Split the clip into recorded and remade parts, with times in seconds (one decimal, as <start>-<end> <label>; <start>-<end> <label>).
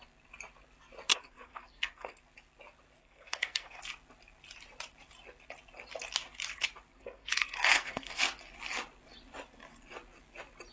0.0-1.1 recorded; 1.1-2.2 remade; 2.2-3.0 recorded; 3.0-3.8 remade; 3.8-6.9 recorded; 6.9-8.2 remade; 8.2-10.7 recorded